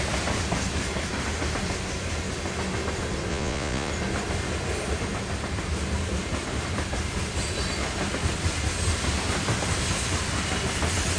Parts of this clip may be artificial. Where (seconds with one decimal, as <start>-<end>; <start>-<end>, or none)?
3.3-3.9